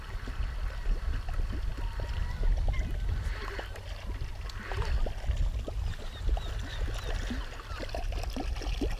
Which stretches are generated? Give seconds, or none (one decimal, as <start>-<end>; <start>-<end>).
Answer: none

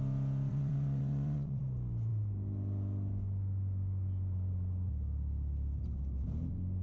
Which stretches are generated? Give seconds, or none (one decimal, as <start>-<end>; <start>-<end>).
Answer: 0.5-1.6

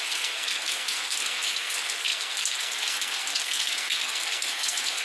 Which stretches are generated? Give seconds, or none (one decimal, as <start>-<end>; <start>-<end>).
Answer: 0.0-5.0